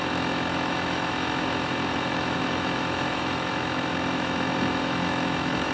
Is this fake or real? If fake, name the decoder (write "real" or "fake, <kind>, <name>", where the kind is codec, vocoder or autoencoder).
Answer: fake, autoencoder, DAC-VAE